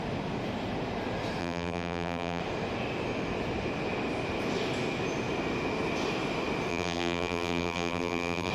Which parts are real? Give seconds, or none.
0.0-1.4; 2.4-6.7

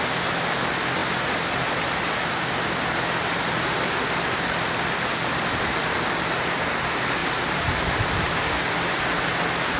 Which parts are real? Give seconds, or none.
0.0-7.2; 8.4-9.8

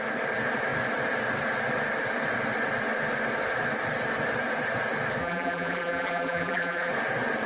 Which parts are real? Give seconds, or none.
0.0-5.2; 6.9-7.5